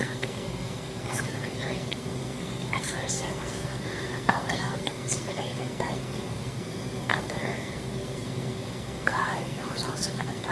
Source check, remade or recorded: remade